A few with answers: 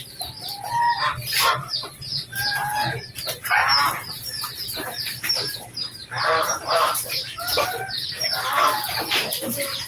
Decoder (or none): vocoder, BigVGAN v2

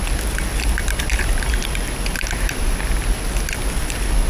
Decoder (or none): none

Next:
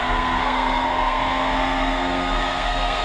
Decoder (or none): codec, SNAC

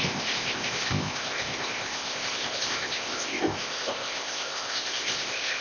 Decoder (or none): codec, ZipCodec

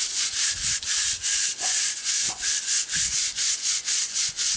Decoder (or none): vocoder, Vocos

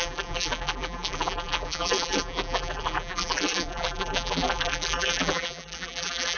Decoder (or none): vocoder, BigVGAN v2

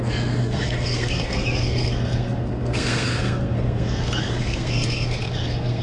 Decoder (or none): codec, SNAC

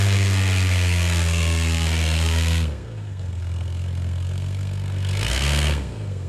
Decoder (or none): codec, SNAC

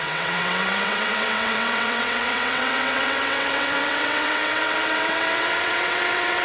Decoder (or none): vocoder, WaveNeXt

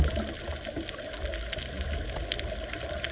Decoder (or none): none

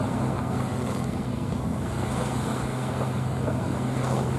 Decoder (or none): codec, SNAC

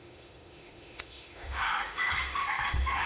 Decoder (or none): autoencoder, DAC-VAE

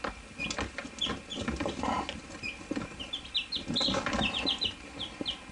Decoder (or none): none